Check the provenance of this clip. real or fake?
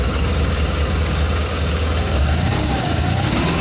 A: fake